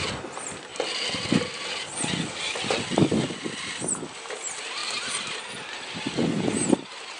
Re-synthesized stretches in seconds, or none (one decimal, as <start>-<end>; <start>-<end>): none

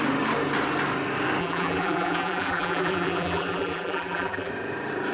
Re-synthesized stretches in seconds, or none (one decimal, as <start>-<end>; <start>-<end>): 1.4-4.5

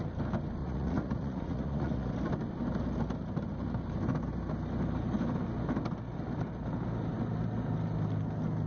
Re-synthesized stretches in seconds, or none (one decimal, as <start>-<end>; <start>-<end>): 0.6-2.1